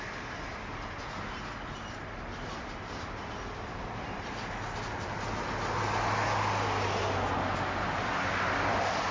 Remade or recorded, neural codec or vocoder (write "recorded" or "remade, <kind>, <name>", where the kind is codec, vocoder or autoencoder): recorded